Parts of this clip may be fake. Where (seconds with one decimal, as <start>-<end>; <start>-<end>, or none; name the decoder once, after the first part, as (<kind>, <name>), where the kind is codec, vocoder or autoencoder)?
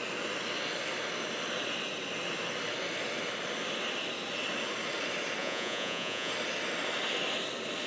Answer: 5.4-6.3 (vocoder, Vocos)